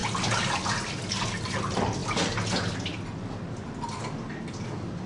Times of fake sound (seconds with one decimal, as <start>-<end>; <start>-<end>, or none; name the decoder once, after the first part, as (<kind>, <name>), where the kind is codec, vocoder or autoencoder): none